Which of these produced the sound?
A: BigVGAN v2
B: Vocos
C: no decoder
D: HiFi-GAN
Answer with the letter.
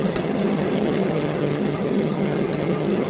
D